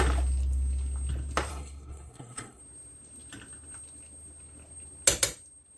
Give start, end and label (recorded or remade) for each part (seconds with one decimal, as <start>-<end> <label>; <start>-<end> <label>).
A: 0.0-1.5 recorded; 1.5-2.6 remade; 2.6-5.8 recorded